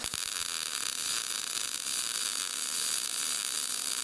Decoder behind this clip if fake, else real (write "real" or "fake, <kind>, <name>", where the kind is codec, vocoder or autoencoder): fake, vocoder, BigVGAN v2